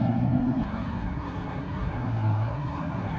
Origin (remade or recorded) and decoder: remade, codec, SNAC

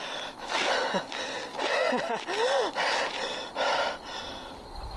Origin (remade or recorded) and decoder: recorded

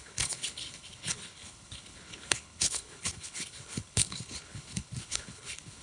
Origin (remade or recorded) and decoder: remade, codec, HILCodec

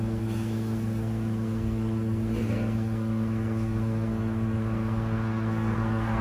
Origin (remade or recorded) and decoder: remade, codec, SNAC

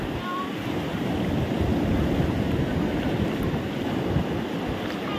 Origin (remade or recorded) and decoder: recorded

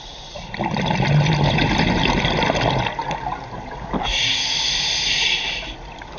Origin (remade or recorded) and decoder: recorded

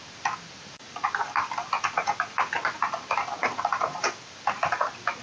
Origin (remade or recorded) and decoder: remade, vocoder, BigVGAN v2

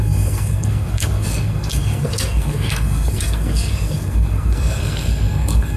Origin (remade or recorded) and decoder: remade, codec, SNAC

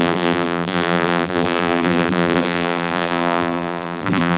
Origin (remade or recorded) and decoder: remade, vocoder, BigVGAN v2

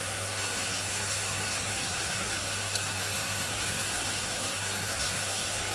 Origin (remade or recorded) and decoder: remade, codec, SNAC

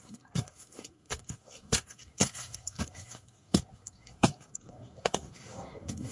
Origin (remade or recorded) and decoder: remade, codec, SNAC